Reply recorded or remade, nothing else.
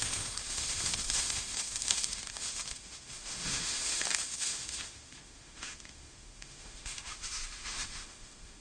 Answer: remade